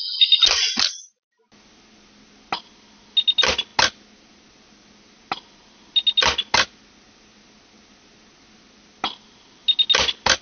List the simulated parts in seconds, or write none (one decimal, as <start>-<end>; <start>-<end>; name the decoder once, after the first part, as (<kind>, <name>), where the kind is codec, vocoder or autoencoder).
none